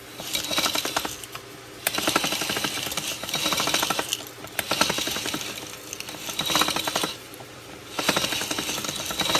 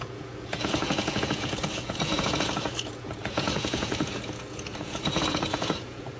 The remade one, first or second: second